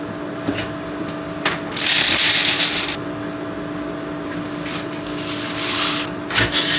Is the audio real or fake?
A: real